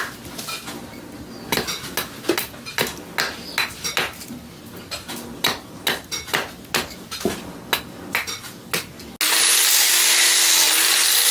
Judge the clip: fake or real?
real